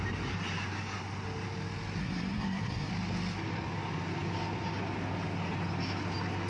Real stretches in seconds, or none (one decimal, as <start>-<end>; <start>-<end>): 0.0-2.0; 2.9-6.5